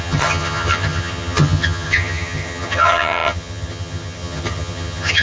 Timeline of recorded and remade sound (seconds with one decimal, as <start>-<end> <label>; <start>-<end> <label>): 0.0-5.2 remade